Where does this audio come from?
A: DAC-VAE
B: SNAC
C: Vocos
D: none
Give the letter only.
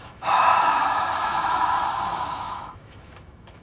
A